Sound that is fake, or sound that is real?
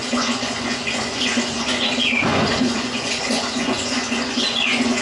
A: fake